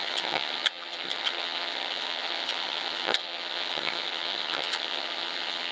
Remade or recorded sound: remade